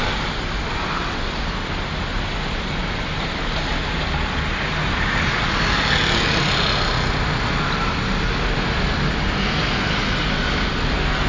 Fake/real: real